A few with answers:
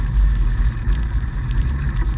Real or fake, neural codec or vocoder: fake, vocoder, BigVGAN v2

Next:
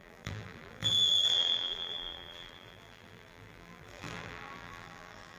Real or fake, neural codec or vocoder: fake, vocoder, BigVGAN v2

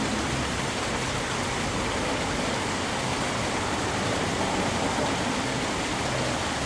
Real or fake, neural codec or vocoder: real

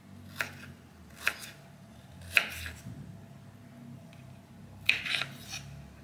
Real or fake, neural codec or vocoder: real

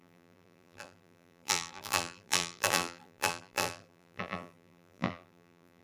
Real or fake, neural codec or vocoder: fake, vocoder, BigVGAN v2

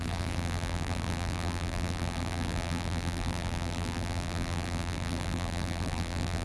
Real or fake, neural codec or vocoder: fake, vocoder, BigVGAN v2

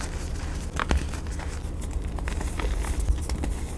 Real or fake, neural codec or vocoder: real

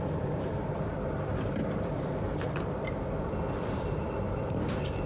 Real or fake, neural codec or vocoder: fake, vocoder, BigVGAN v2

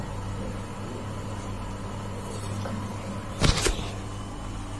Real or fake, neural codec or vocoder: real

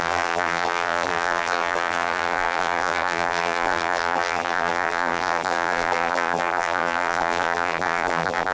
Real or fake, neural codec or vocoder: fake, vocoder, BigVGAN v2